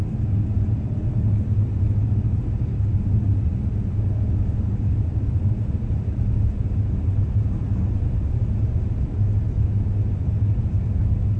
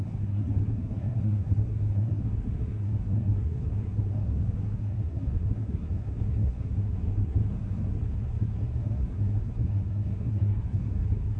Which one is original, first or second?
first